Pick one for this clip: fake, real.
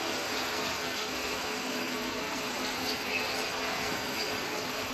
fake